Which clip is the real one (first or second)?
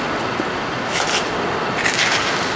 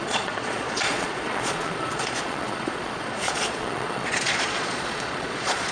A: first